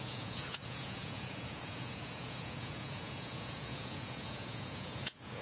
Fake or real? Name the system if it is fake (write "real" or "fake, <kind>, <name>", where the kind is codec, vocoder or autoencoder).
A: fake, vocoder, Vocos